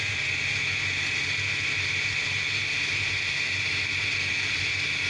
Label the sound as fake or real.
real